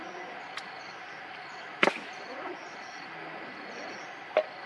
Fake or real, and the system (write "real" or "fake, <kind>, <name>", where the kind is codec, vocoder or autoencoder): real